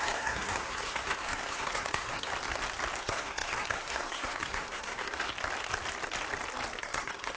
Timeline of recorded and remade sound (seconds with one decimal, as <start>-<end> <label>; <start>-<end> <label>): 0.0-2.3 remade; 2.3-3.0 recorded; 3.0-5.3 remade; 5.3-6.8 recorded; 6.8-7.4 remade